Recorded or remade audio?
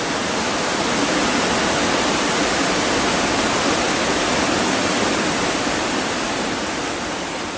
recorded